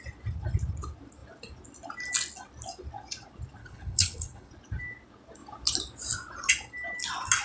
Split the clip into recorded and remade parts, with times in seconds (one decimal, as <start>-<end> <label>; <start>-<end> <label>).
0.0-3.6 recorded; 3.6-4.5 remade; 4.5-7.4 recorded